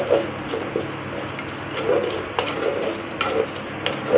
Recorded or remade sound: recorded